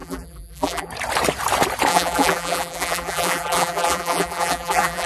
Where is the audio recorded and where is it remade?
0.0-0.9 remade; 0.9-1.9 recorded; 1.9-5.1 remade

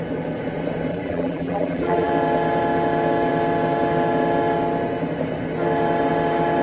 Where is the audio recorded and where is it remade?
0.0-0.9 recorded; 0.9-2.1 remade; 2.1-6.6 recorded